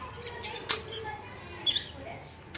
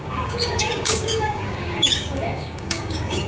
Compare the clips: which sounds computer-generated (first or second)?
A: second